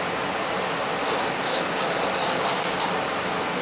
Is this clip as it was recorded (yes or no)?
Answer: yes